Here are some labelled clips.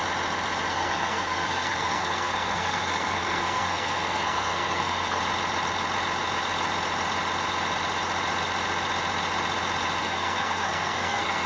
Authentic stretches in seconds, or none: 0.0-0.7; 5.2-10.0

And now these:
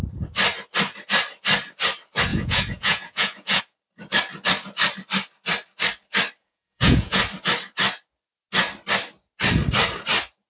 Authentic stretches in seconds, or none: 0.0-2.3; 3.6-6.4; 7.2-10.5

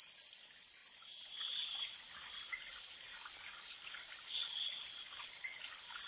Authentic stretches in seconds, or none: 0.0-6.1